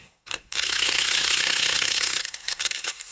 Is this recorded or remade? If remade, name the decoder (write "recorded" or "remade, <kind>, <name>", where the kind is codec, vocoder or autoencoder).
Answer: remade, codec, SNAC